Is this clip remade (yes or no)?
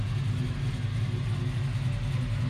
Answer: no